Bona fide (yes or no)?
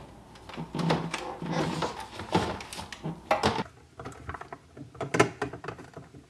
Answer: yes